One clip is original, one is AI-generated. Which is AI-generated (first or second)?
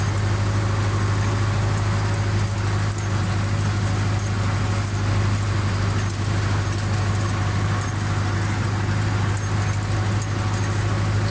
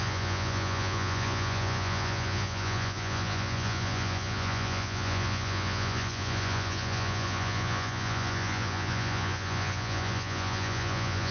second